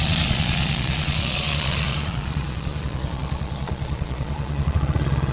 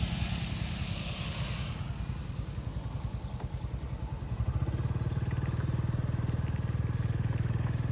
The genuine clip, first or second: second